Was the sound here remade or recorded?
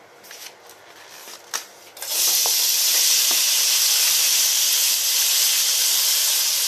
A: recorded